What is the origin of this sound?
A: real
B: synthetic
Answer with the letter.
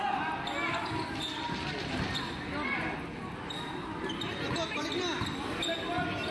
A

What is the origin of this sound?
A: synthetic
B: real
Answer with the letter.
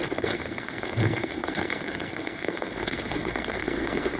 A